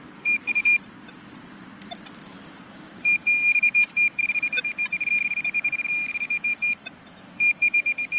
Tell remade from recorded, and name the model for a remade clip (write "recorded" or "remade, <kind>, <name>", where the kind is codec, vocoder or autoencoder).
remade, vocoder, BigVGAN v2